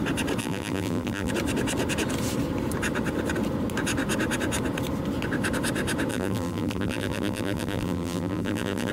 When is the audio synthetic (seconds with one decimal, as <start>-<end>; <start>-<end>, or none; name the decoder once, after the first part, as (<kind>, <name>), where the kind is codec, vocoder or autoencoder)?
0.4-1.3 (vocoder, BigVGAN v2); 6.1-8.9